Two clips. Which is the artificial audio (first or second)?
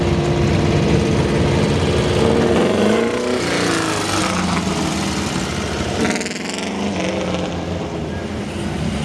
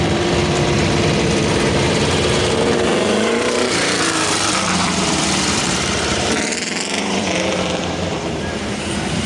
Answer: second